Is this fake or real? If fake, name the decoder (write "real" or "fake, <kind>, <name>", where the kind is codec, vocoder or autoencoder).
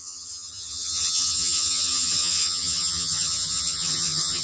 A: fake, vocoder, HiFi-GAN